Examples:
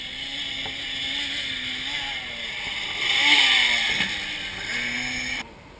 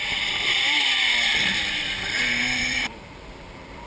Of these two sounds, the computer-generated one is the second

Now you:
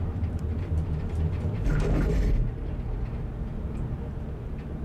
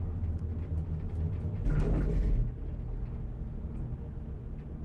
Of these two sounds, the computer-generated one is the first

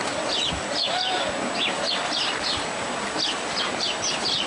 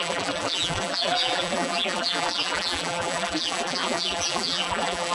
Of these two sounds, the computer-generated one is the second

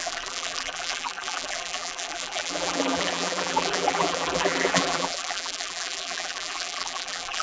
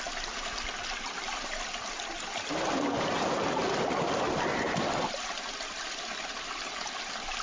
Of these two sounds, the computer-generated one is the first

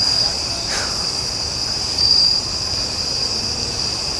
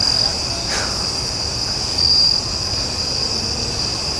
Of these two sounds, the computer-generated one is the first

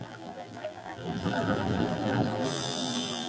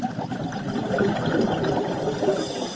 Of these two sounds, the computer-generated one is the first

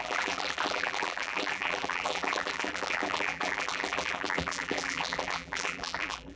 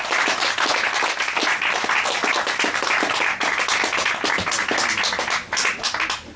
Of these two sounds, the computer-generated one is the first